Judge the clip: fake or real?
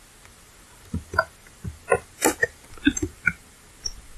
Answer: real